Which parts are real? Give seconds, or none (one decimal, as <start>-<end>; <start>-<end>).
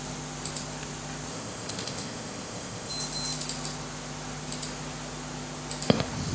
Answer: 0.0-1.3; 2.9-6.3